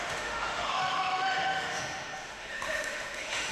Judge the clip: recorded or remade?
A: remade